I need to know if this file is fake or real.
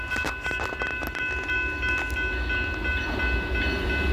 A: real